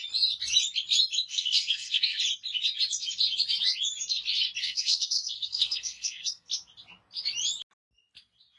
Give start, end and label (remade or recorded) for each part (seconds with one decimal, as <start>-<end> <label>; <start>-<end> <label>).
0.0-1.3 recorded; 1.3-2.2 remade; 2.2-4.6 recorded; 4.6-6.5 remade; 6.5-8.6 recorded